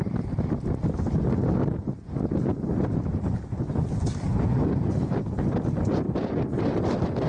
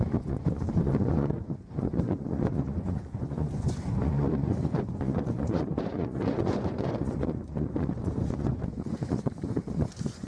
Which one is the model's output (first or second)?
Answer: second